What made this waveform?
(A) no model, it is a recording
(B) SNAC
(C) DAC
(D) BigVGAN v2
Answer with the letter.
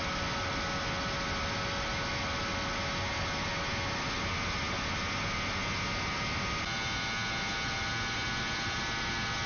A